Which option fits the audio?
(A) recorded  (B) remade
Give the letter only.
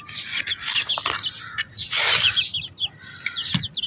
A